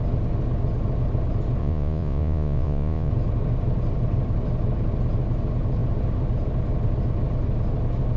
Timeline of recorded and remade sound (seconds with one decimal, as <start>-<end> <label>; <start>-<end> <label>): 0.0-1.6 recorded; 1.6-3.1 remade; 3.1-8.2 recorded